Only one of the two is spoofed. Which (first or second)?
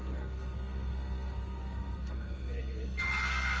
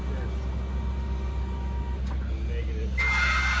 first